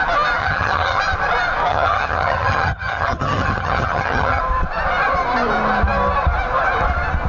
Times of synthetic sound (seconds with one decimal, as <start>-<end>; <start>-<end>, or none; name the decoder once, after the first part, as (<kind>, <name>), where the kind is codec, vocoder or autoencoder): 0.4-1.0 (vocoder, HiFi-GAN); 1.7-4.4